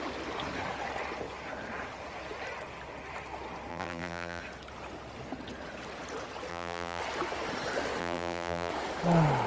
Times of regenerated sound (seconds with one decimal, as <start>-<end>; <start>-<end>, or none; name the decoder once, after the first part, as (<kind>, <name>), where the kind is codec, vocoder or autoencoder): 3.7-4.4 (vocoder, BigVGAN v2); 6.5-7.0; 8.0-8.7